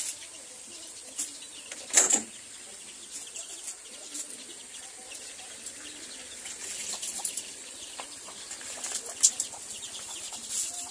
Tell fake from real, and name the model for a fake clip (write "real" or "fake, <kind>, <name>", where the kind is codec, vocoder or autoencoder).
real